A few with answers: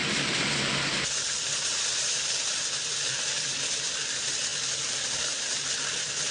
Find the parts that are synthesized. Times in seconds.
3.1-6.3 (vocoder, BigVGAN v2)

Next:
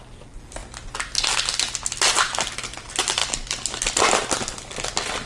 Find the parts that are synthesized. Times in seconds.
none

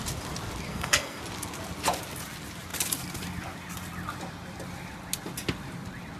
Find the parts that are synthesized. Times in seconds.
0.7-1.2 (codec, SNAC)

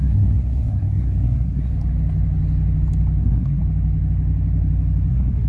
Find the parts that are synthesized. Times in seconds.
0.0-1.7 (codec, SNAC); 3.2-3.6; 5.1-5.5